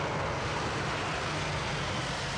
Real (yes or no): yes